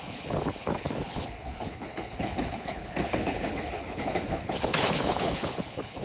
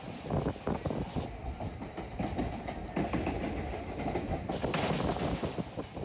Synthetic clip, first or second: first